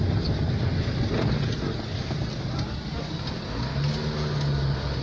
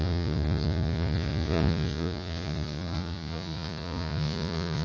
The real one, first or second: first